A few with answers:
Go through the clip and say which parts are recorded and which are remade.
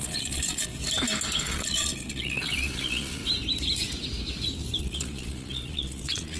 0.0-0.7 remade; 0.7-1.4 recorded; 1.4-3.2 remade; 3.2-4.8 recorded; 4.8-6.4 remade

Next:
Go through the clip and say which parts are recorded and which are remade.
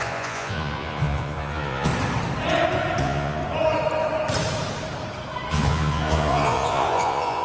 0.0-1.9 remade; 1.9-3.0 recorded; 3.0-3.4 remade; 3.4-5.5 recorded; 5.5-7.4 remade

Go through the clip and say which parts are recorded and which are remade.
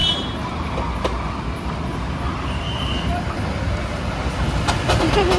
0.0-5.4 recorded